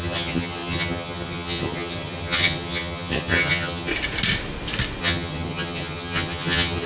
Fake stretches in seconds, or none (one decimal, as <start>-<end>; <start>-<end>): 0.0-3.9; 5.0-6.9